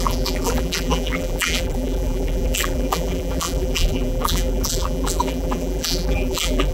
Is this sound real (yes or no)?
no